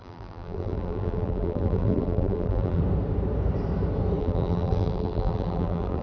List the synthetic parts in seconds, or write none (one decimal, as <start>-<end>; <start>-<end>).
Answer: 0.0-2.8; 4.2-6.0